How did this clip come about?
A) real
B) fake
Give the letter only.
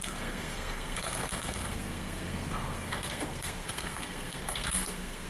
B